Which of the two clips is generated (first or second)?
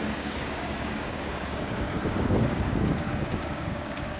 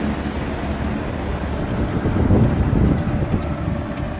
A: first